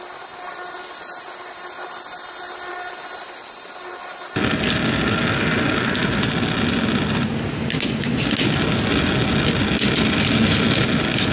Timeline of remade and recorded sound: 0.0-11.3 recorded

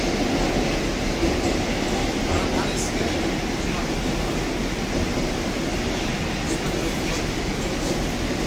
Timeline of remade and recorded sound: 0.0-8.5 recorded